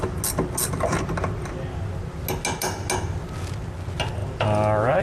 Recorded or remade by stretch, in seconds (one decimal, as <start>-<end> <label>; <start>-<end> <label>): 0.0-5.0 recorded